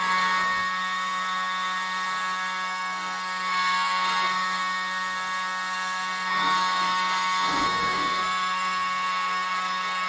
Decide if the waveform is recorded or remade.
remade